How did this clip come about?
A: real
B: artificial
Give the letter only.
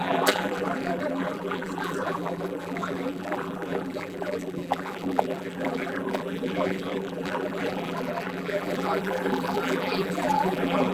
B